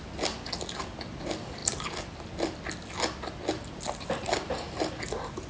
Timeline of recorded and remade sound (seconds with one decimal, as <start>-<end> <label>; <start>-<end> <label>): 0.0-5.5 recorded